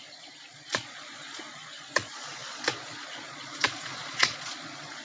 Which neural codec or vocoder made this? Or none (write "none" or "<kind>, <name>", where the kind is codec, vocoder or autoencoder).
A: vocoder, Vocos